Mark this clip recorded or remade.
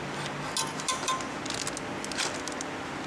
recorded